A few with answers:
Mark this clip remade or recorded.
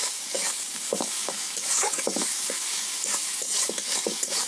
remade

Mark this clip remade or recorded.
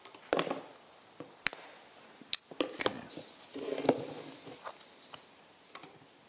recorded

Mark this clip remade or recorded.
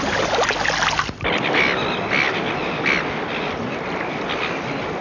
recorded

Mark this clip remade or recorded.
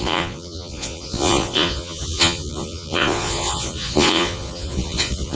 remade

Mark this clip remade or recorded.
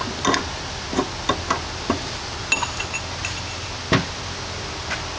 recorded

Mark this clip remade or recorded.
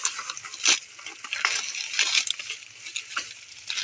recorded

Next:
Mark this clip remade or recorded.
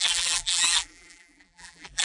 remade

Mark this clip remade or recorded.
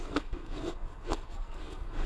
remade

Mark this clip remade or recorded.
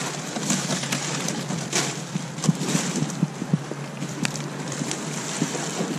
remade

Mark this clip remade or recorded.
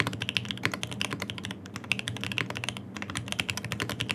recorded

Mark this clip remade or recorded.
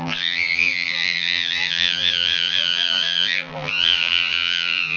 remade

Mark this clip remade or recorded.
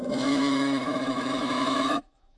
remade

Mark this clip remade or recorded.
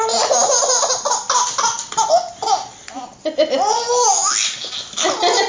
recorded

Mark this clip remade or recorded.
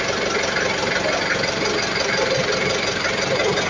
recorded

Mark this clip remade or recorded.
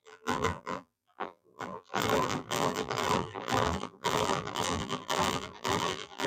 remade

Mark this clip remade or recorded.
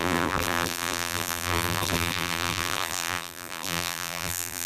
remade